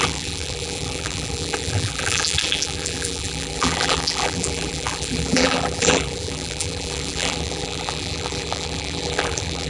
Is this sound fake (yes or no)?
yes